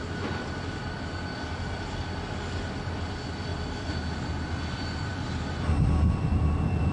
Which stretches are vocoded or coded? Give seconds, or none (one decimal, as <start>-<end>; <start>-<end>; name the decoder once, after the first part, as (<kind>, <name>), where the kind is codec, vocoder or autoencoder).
none